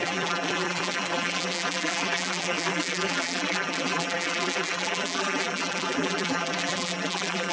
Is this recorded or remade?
remade